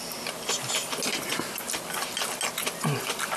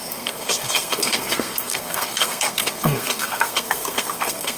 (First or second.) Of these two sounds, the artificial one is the second